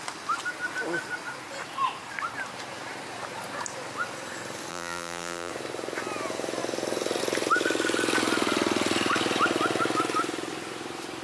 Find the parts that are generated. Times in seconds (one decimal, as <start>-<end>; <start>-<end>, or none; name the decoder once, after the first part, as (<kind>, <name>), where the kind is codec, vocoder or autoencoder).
4.7-5.5 (vocoder, BigVGAN v2)